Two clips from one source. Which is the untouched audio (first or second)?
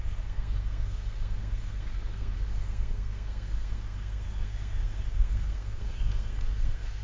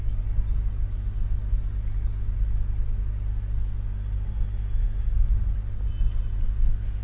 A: second